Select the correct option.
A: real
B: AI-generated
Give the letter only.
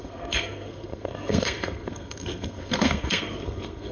B